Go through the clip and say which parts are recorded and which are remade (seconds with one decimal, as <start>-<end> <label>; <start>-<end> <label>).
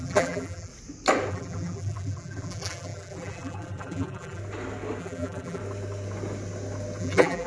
0.0-0.7 remade; 0.7-1.3 recorded; 1.3-4.4 remade; 4.4-5.0 recorded; 5.0-5.6 remade; 5.6-7.0 recorded; 7.0-7.5 remade